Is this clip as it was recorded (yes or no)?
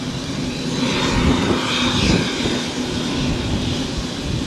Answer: yes